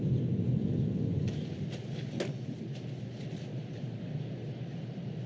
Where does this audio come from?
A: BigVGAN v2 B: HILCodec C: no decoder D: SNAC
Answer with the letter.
C